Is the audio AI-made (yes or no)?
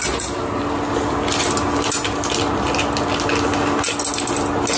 no